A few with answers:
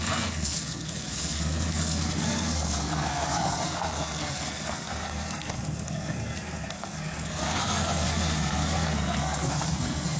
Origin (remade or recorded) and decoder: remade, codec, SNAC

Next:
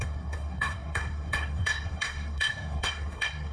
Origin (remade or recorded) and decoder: remade, codec, SNAC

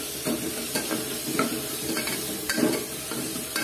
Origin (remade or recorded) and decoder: recorded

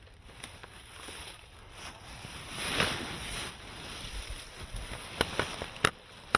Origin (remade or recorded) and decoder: recorded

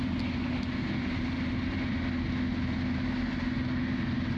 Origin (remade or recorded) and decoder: recorded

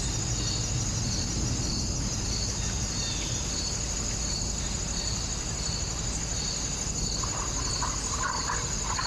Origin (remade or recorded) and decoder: recorded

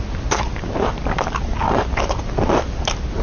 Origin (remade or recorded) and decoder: recorded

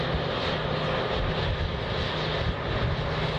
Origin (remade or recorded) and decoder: recorded